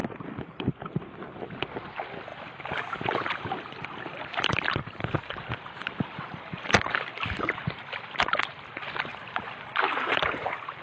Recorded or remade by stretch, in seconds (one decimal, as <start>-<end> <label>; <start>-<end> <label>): 0.0-2.3 recorded; 2.3-7.1 remade; 7.1-9.1 recorded; 9.1-10.8 remade